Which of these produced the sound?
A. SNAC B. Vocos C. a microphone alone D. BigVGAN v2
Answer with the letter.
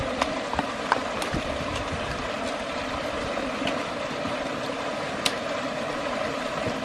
D